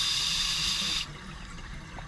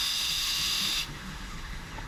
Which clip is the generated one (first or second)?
second